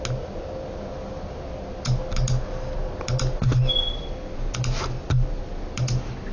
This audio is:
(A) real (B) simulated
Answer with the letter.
A